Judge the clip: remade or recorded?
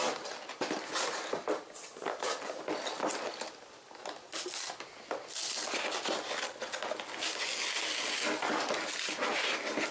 recorded